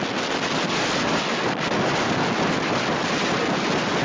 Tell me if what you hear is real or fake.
real